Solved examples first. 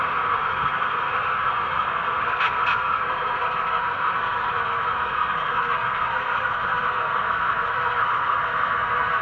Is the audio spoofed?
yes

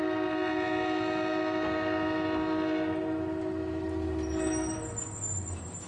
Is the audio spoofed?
no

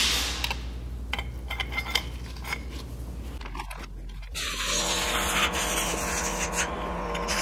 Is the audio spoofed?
no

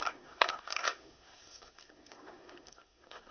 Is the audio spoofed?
yes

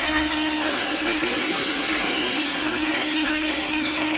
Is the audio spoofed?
yes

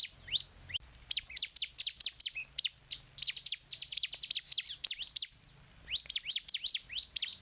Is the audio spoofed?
no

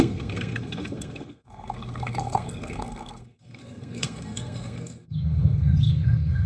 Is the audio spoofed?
yes